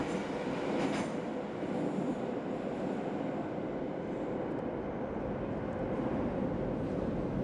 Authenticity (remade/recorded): recorded